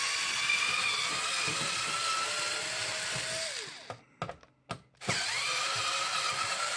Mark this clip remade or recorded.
recorded